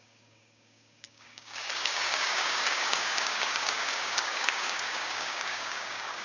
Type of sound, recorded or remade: remade